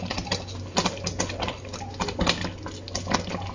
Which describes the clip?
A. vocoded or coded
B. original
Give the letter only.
B